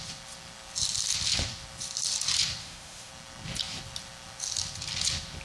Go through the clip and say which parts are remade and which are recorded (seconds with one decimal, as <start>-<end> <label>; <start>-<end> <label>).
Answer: 0.0-2.6 recorded; 2.6-3.1 remade; 3.1-5.4 recorded

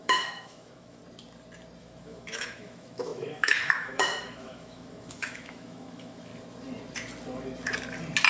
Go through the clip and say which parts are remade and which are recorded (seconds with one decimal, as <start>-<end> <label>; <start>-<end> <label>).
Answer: 0.0-1.0 remade; 1.0-1.8 recorded; 1.8-6.3 remade; 6.3-8.3 recorded

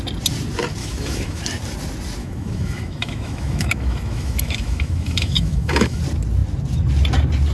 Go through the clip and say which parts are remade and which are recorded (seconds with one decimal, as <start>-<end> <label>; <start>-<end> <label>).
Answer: 0.0-0.8 recorded; 0.8-1.4 remade; 1.4-2.2 recorded; 2.2-6.0 remade; 6.0-7.5 recorded

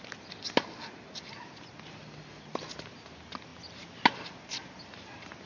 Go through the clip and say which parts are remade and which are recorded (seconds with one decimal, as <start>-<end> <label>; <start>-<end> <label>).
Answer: 0.0-5.5 recorded

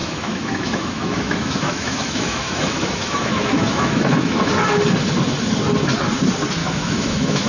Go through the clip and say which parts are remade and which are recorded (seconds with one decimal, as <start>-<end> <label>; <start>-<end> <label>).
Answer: 0.0-4.5 remade; 4.5-6.6 recorded; 6.6-7.5 remade

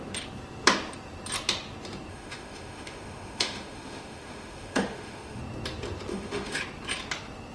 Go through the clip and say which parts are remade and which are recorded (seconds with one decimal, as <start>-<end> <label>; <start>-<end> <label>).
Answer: 0.0-2.1 recorded; 2.1-5.4 remade; 5.4-6.1 recorded; 6.1-6.6 remade; 6.6-7.5 recorded